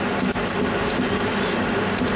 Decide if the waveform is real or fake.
real